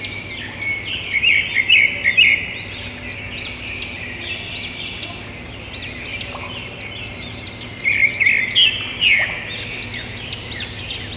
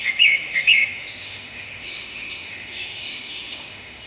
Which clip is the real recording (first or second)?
first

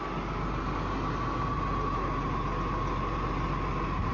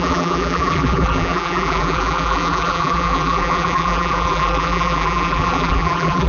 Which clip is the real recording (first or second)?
first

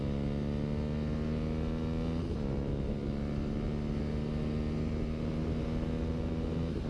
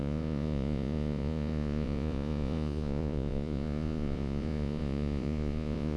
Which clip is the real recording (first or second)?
first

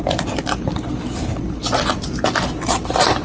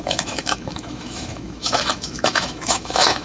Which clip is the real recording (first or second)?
first